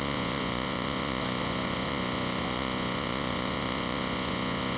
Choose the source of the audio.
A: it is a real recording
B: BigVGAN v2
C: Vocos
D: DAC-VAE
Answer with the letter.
C